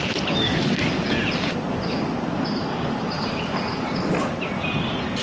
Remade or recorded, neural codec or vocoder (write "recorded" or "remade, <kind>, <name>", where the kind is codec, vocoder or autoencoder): recorded